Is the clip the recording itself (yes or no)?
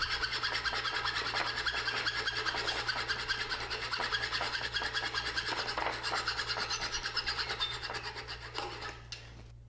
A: yes